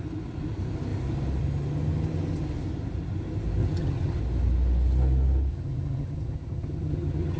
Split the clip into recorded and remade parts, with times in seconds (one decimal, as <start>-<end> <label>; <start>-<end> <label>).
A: 0.0-3.6 recorded; 3.6-4.2 remade; 4.2-5.5 recorded; 5.5-7.4 remade